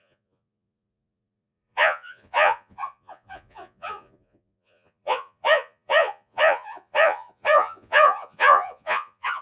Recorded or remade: remade